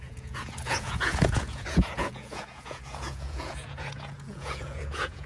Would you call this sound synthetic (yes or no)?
yes